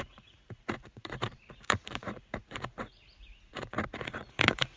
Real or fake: fake